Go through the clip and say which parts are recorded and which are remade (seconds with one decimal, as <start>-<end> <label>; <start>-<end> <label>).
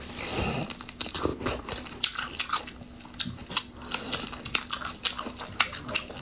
0.0-6.2 recorded